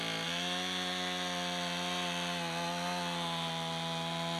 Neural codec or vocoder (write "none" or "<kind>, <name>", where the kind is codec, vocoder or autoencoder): none